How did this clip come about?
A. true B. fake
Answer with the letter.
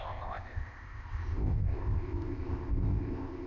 B